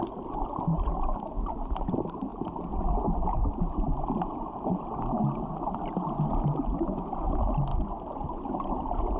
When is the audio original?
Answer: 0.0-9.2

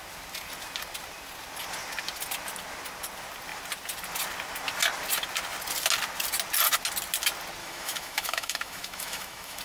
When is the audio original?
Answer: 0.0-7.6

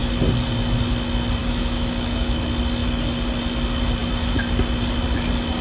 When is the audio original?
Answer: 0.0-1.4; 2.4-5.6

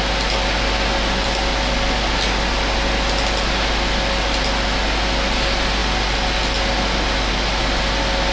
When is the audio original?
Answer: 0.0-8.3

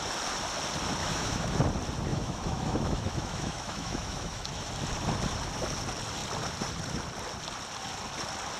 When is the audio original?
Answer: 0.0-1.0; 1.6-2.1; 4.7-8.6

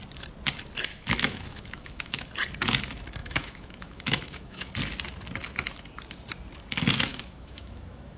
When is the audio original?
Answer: 0.0-0.9; 2.3-3.2; 4.7-7.1